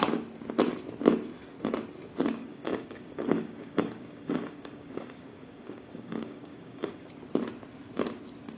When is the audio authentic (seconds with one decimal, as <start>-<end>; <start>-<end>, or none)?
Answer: 0.0-2.4; 7.1-8.6